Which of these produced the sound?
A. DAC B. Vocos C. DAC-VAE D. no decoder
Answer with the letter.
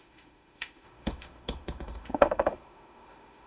C